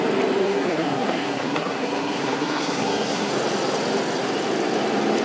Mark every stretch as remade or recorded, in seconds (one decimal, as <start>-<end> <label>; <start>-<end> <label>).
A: 0.0-0.4 recorded; 0.4-3.3 remade; 3.3-5.2 recorded